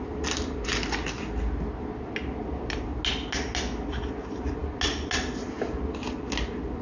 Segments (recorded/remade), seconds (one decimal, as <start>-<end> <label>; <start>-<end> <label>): 0.0-6.8 recorded